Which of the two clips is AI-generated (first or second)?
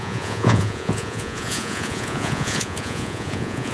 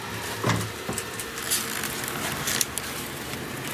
first